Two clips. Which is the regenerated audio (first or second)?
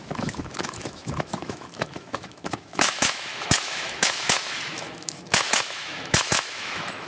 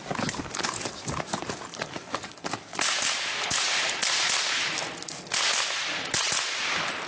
first